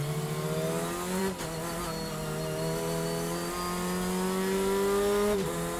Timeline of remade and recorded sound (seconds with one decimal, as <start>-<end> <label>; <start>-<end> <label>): 0.0-5.8 recorded